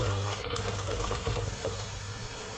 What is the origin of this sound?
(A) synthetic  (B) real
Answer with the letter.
A